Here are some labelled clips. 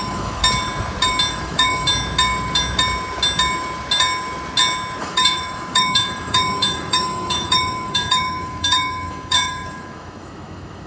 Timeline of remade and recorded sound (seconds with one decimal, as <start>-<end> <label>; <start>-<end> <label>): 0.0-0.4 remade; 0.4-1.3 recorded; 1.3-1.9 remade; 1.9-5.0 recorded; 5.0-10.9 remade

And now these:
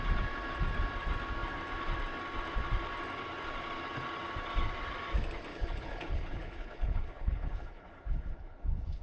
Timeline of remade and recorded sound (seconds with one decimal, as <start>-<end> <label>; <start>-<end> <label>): 0.0-5.5 recorded; 5.5-9.0 remade

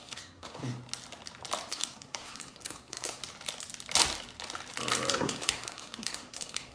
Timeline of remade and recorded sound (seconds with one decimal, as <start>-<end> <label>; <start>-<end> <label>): 0.0-0.6 remade; 0.6-1.7 recorded; 1.7-3.2 remade; 3.2-5.1 recorded; 5.1-6.7 remade

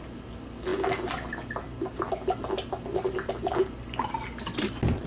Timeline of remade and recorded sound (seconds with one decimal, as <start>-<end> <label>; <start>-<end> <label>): 0.0-5.1 recorded

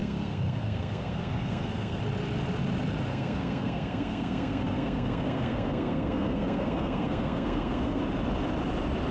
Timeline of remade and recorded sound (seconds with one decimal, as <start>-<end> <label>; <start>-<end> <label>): 0.0-2.0 remade; 2.0-3.1 recorded; 3.1-8.0 remade; 8.0-9.1 recorded

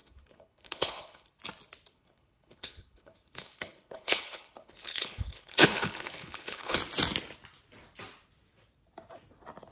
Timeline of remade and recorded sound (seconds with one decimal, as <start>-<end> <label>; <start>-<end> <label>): 0.0-1.4 remade; 1.4-1.9 recorded; 1.9-6.8 remade; 6.8-9.7 recorded

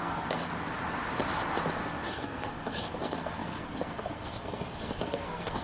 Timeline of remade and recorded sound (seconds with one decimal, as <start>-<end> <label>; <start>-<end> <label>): 0.0-0.5 remade; 0.5-2.1 recorded; 2.1-5.6 remade

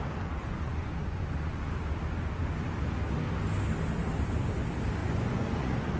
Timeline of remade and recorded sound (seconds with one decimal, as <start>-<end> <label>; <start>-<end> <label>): 0.0-0.4 recorded; 0.4-1.7 remade; 1.7-5.0 recorded; 5.0-6.0 remade